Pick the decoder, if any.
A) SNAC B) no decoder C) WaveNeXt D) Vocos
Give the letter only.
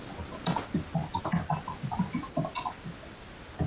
B